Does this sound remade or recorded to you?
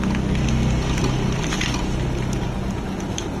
recorded